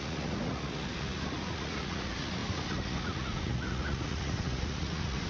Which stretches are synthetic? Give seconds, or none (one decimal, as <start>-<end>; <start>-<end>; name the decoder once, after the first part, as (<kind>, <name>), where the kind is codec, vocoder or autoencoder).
0.0-5.3 (vocoder, Vocos)